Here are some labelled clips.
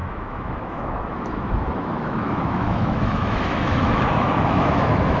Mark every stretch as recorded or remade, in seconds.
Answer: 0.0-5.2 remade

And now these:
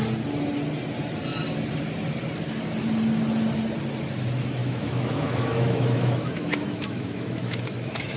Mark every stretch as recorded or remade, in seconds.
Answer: 0.0-4.6 recorded; 4.6-8.2 remade

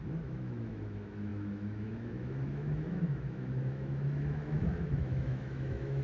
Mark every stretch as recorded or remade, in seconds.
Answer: 0.0-6.0 remade